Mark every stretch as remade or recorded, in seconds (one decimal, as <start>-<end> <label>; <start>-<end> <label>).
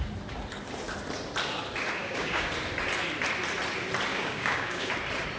0.0-2.0 recorded; 2.0-2.5 remade; 2.5-4.1 recorded; 4.1-4.9 remade; 4.9-5.4 recorded